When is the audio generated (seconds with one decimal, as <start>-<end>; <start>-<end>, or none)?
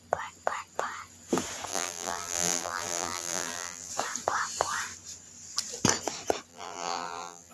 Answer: 1.7-3.9; 6.5-7.5